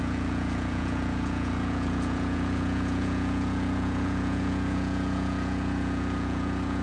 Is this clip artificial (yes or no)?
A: yes